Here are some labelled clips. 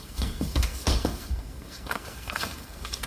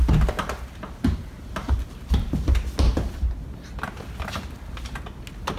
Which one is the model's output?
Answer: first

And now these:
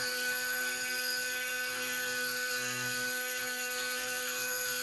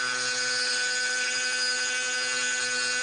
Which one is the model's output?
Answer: first